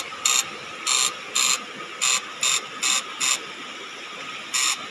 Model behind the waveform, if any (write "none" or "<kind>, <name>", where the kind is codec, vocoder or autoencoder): none